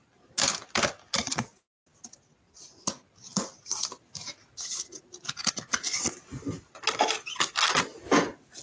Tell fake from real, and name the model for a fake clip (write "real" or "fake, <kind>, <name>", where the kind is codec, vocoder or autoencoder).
real